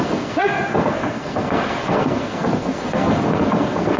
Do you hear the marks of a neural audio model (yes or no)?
yes